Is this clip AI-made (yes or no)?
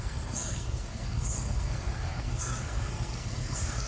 yes